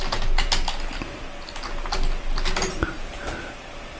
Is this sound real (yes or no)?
yes